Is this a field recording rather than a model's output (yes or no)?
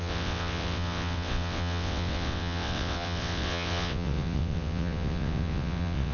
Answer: no